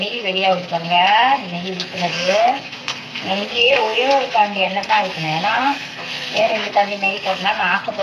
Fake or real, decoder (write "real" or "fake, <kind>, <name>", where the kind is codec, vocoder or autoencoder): fake, codec, SNAC